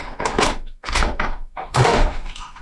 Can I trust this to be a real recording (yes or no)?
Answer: no